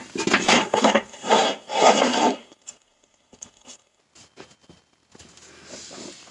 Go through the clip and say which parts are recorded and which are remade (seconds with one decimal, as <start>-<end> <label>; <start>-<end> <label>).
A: 0.0-0.4 recorded; 0.4-4.0 remade; 4.0-6.3 recorded